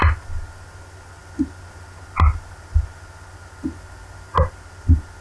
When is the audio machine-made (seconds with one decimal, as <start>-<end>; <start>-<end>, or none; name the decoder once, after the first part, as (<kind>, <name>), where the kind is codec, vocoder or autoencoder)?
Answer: none